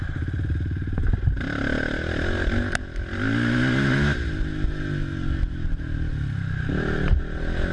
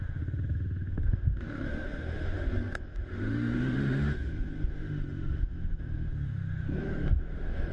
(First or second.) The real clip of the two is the first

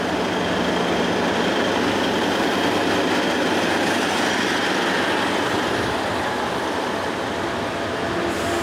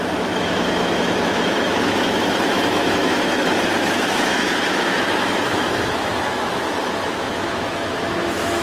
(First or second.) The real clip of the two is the first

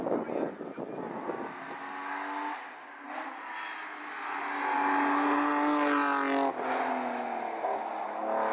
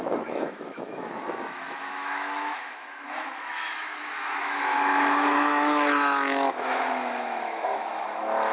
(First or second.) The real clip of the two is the first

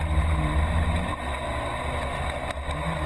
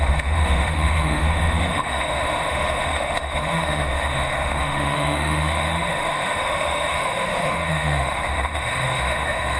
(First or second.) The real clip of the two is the first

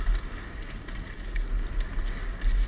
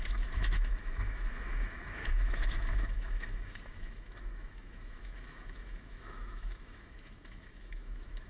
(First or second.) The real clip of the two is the first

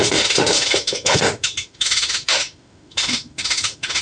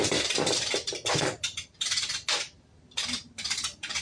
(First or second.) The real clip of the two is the second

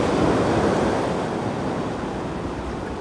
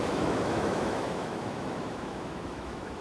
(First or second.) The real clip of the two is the first